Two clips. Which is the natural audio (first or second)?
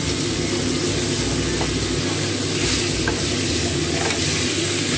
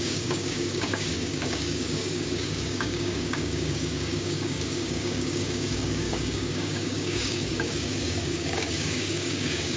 first